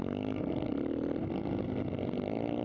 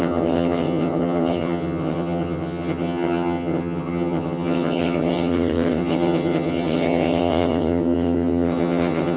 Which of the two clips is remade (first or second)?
second